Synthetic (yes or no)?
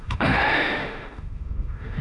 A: yes